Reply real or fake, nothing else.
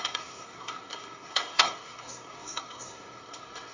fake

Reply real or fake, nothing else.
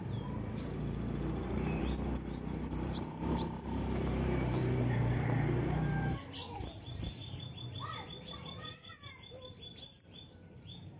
fake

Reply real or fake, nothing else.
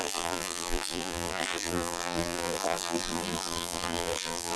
fake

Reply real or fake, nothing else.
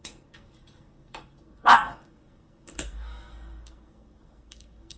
fake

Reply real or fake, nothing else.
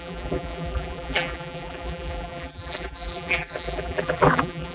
fake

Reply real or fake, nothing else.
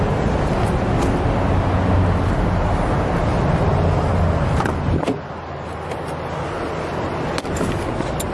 real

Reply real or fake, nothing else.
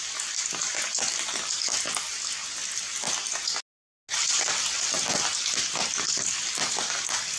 real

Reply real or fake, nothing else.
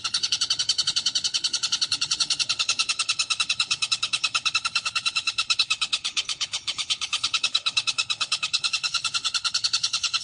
fake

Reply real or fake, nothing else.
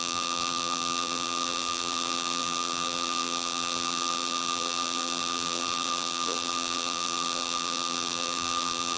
fake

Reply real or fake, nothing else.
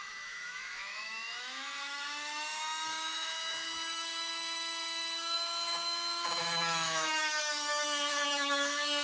fake